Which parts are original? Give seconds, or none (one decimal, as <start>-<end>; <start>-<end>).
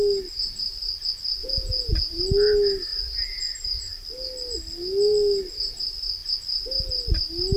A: 0.0-1.4; 2.2-7.6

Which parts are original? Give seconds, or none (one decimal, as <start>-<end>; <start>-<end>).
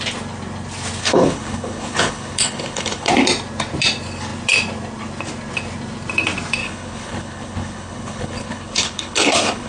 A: 0.0-1.0; 3.1-6.6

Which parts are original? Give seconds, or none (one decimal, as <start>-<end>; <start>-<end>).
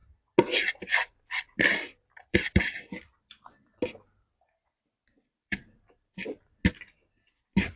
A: 0.0-0.8; 3.7-4.7; 6.5-7.1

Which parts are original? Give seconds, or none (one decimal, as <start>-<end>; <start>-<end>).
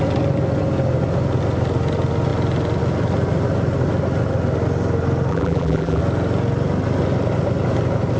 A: 0.0-5.3; 6.0-8.2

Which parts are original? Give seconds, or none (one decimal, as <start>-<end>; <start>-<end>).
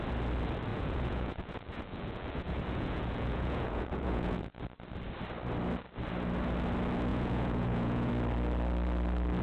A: 0.0-0.7; 4.6-7.1; 8.1-9.4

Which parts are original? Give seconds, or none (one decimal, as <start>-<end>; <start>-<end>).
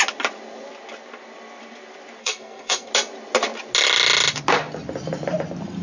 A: 0.0-2.2; 2.9-5.8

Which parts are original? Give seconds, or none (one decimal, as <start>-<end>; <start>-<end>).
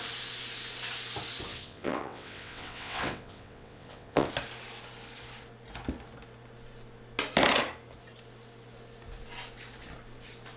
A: 0.0-1.5; 4.3-10.6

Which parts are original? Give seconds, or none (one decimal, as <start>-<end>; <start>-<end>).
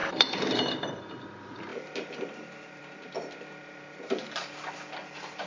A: 1.0-1.7; 4.7-5.5